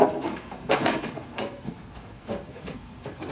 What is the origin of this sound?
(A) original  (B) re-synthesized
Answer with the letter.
B